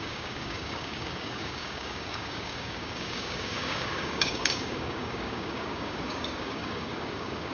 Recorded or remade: remade